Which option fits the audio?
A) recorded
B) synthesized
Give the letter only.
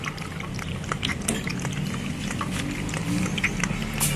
A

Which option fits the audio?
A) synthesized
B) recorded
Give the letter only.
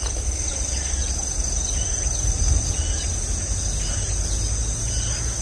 B